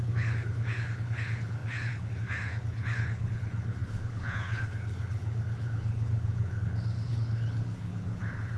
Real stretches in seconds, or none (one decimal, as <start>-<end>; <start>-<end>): none